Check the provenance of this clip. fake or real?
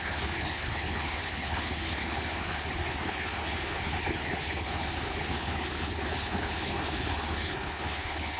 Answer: fake